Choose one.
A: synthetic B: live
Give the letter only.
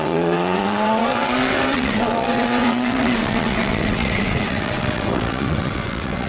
A